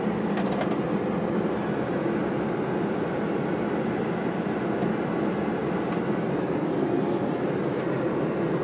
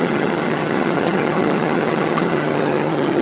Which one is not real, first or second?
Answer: second